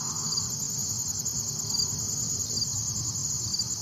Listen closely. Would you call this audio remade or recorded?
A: recorded